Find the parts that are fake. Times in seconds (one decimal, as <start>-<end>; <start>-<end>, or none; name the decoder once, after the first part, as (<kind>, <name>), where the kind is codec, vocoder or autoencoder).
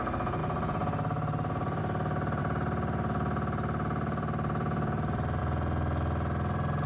0.4-1.8 (vocoder, BigVGAN v2); 2.4-5.4